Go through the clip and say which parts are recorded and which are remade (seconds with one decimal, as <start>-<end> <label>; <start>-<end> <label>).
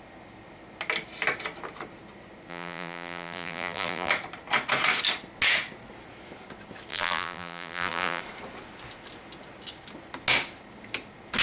0.0-2.5 recorded; 2.5-4.1 remade; 4.1-6.9 recorded; 6.9-8.2 remade; 8.2-11.4 recorded